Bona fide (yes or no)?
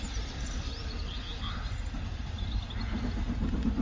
yes